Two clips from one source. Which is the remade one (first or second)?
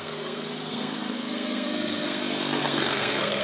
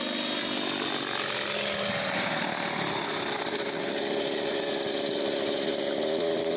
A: first